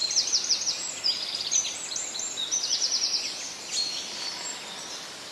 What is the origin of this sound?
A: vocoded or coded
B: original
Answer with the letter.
B